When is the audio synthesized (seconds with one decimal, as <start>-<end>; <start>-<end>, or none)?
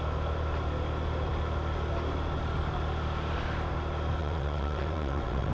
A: 4.2-5.5